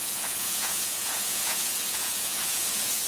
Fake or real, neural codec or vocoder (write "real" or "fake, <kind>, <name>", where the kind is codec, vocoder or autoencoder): fake, vocoder, Vocos